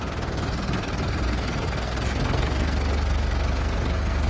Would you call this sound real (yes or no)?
no